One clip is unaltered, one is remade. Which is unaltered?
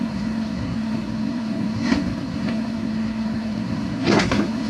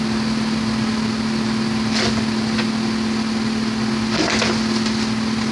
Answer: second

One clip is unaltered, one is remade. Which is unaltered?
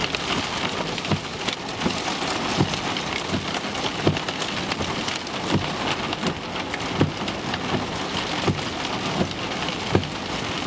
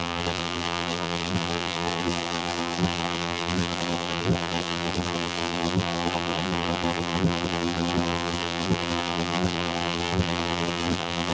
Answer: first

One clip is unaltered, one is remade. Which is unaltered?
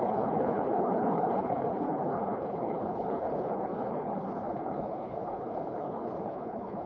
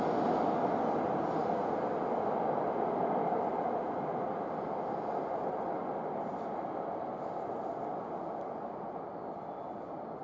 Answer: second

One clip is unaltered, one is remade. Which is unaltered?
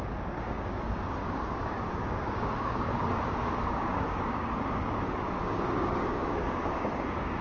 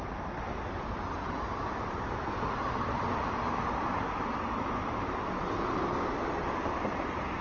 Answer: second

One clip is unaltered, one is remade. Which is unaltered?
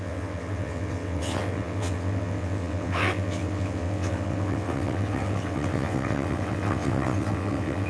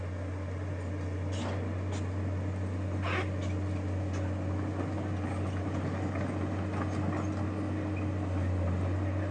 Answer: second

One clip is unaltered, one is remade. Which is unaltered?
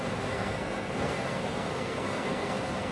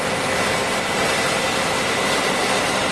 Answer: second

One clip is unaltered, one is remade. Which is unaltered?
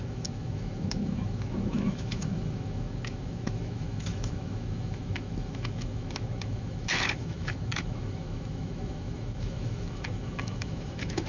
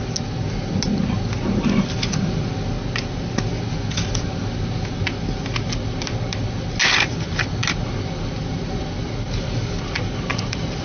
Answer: second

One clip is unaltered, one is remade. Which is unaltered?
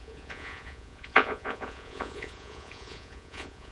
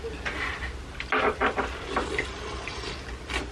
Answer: second